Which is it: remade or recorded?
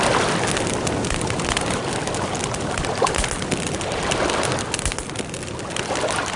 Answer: recorded